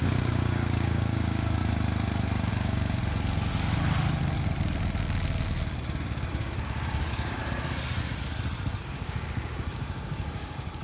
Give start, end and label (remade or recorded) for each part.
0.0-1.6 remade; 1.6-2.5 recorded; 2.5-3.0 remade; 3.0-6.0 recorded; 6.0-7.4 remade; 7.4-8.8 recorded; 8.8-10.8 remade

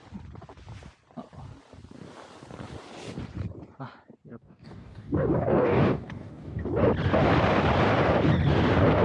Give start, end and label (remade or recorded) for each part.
0.0-4.3 recorded; 4.3-6.6 remade; 6.6-9.0 recorded

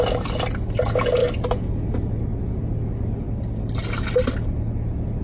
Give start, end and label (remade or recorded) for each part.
0.0-5.2 recorded